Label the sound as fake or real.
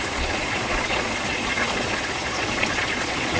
fake